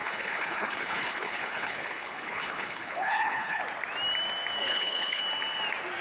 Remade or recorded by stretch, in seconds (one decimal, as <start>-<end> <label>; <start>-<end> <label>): 0.0-3.6 remade; 3.6-4.6 recorded; 4.6-5.2 remade; 5.2-6.0 recorded